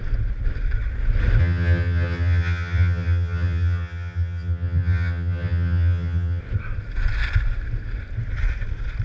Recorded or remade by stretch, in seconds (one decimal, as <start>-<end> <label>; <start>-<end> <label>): 0.0-1.4 recorded; 1.4-6.4 remade; 6.4-9.0 recorded